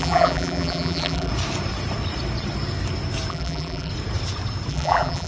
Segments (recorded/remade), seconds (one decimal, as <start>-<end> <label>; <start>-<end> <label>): 0.0-1.3 remade; 1.3-3.3 recorded; 3.3-3.9 remade; 3.9-4.7 recorded; 4.7-5.3 remade